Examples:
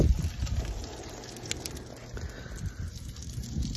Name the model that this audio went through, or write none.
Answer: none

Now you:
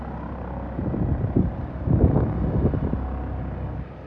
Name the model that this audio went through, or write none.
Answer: none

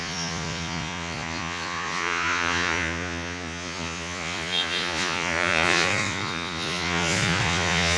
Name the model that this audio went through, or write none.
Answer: vocoder, Vocos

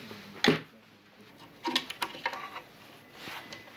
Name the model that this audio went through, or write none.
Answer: none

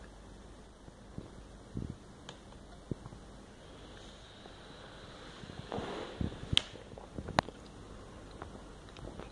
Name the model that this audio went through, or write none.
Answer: none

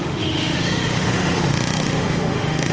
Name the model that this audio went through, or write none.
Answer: autoencoder, DAC-VAE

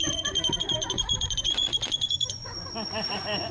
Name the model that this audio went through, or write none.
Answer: vocoder, Vocos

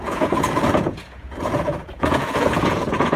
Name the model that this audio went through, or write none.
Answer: vocoder, Vocos